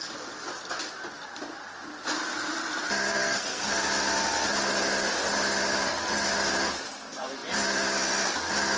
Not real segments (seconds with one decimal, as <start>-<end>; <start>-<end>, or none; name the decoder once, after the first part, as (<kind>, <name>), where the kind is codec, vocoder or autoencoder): 3.1-3.7 (codec, SNAC)